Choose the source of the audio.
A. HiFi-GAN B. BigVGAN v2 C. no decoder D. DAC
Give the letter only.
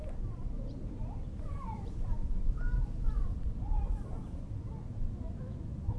B